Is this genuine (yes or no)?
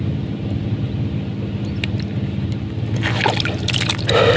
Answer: yes